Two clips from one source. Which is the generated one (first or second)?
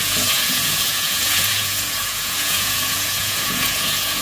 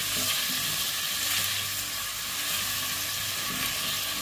first